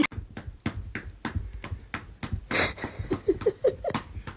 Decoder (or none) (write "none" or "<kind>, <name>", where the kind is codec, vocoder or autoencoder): none